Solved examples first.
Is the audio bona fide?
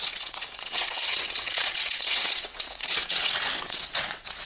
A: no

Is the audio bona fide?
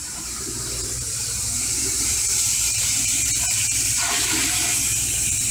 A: no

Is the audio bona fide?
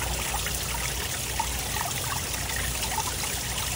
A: yes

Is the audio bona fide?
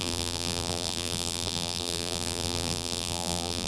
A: no